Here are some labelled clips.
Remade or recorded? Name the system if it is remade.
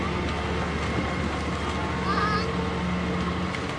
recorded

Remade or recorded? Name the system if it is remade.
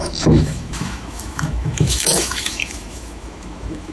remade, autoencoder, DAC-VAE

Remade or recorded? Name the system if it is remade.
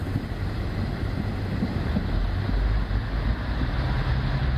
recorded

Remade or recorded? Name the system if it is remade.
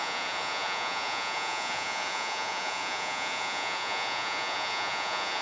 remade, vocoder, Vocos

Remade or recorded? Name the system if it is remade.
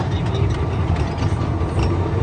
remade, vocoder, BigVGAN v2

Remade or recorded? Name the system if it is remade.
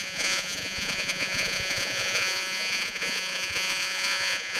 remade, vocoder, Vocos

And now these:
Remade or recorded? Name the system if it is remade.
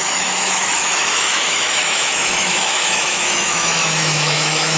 remade, autoencoder, DAC-VAE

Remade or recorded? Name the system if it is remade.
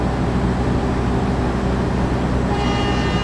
recorded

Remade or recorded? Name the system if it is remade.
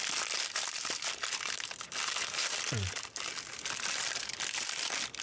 remade, vocoder, BigVGAN v2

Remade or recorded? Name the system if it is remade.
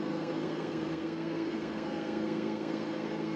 remade, codec, SNAC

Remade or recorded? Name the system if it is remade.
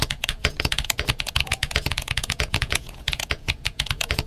remade, vocoder, Vocos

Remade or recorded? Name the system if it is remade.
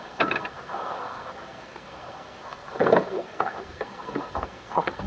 remade, codec, SNAC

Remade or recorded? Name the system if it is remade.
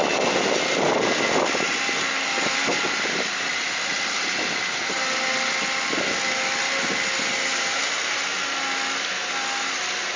recorded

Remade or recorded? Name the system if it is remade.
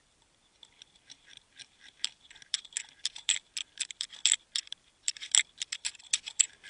remade, vocoder, BigVGAN v2